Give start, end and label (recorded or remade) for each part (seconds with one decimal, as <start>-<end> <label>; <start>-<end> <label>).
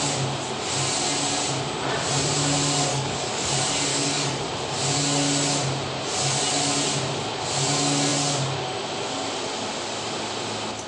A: 0.0-2.9 recorded; 2.9-3.5 remade; 3.5-3.9 recorded; 3.9-4.5 remade; 4.5-10.9 recorded